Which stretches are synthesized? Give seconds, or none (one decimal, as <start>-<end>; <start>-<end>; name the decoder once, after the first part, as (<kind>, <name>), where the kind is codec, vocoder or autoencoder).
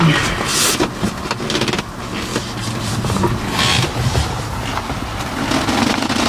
2.3-2.9 (vocoder, BigVGAN v2)